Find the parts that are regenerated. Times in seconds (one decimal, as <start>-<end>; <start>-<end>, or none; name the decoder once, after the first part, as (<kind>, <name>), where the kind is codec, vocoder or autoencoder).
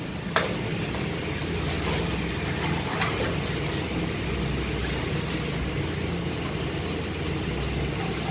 none